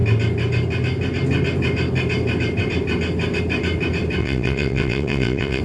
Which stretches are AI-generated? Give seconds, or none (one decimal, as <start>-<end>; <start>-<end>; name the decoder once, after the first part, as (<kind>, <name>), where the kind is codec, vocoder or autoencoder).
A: 4.2-5.6 (vocoder, WaveNeXt)